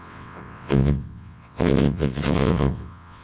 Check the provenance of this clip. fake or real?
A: fake